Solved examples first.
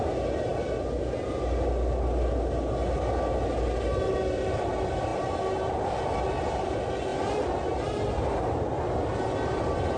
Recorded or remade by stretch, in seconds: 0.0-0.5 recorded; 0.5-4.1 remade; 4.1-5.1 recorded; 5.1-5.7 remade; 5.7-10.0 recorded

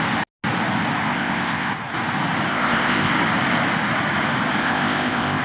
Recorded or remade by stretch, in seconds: 0.0-1.1 recorded; 1.1-1.7 remade; 1.7-2.5 recorded; 2.5-3.1 remade; 3.1-4.6 recorded; 4.6-5.4 remade

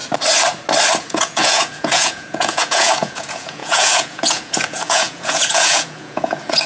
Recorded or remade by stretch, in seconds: 0.0-1.0 recorded; 1.0-6.7 remade

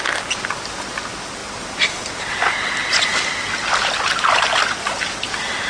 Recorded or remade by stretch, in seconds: 0.0-5.7 recorded

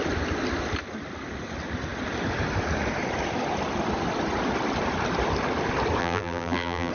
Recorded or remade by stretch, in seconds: 0.0-6.0 recorded; 6.0-6.9 remade

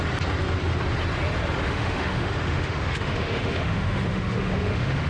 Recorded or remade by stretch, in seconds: 0.0-1.6 recorded; 1.6-5.1 remade

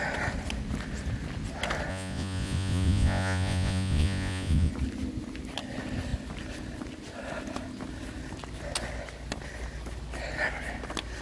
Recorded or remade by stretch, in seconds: 0.0-1.9 recorded; 1.9-4.7 remade; 4.7-11.2 recorded

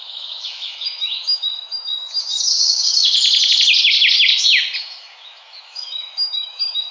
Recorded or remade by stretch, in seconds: 0.0-3.2 remade; 3.2-4.8 recorded; 4.8-6.9 remade